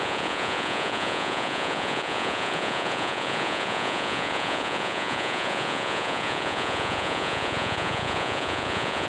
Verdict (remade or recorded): remade